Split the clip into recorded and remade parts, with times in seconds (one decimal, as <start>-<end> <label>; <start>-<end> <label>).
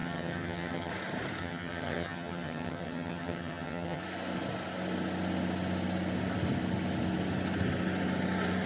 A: 0.0-0.9 remade; 0.9-1.4 recorded; 1.4-4.0 remade; 4.0-8.7 recorded